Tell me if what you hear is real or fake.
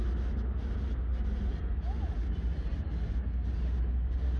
real